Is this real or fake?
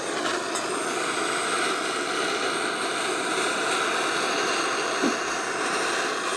real